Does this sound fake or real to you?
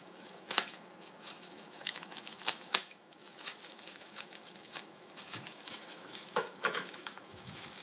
fake